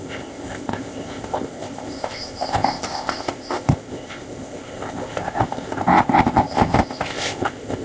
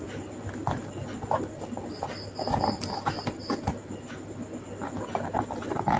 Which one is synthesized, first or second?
first